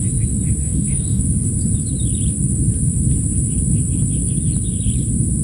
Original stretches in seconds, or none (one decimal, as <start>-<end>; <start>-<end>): 0.0-0.6; 1.2-5.4